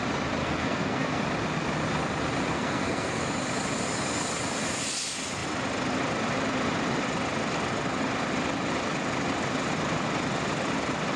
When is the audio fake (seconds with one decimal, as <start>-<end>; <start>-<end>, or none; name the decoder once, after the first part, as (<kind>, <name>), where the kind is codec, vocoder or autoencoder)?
0.4-1.2 (codec, SNAC); 2.5-3.2